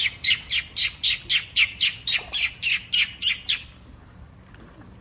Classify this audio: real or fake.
real